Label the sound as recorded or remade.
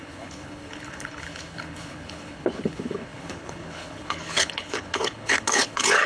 remade